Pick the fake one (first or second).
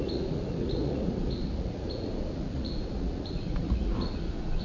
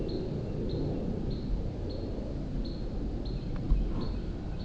first